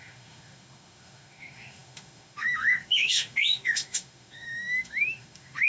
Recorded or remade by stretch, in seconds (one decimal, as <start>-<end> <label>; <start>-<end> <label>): 0.0-5.7 remade